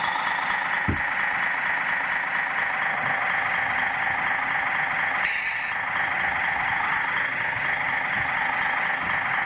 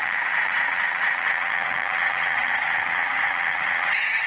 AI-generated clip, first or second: second